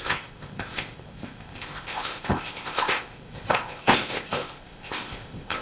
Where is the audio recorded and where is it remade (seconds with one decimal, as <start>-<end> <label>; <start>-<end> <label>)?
0.0-5.6 remade